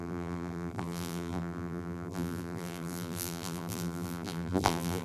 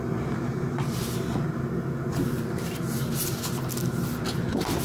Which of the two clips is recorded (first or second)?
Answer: second